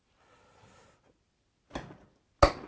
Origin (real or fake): real